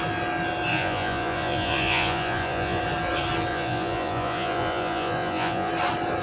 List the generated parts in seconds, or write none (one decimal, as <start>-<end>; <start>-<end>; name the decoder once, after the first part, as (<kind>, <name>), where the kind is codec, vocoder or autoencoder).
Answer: 0.7-2.8 (vocoder, Vocos); 3.5-5.7